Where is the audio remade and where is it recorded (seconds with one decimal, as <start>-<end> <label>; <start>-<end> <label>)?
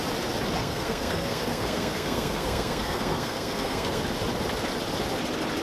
0.0-0.6 recorded; 0.6-4.0 remade; 4.0-5.6 recorded